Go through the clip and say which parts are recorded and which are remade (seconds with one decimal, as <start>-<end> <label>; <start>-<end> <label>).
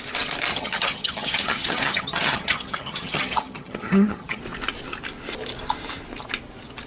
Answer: 0.0-0.5 recorded; 0.5-4.4 remade; 4.4-6.9 recorded